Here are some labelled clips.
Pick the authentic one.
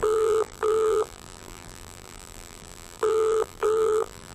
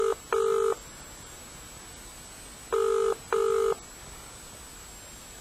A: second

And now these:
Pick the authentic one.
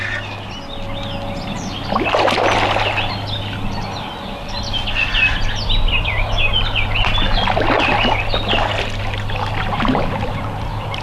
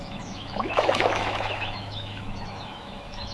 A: first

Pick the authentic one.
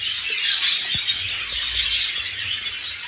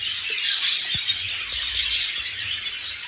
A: first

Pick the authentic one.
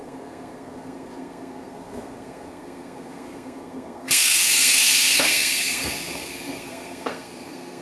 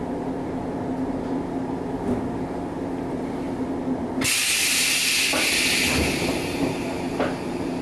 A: second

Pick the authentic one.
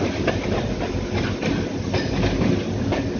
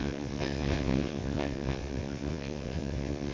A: first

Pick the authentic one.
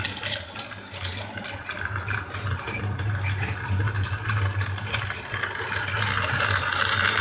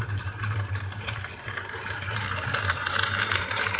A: first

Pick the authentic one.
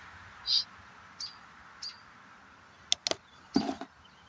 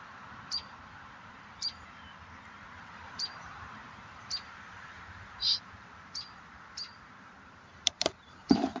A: first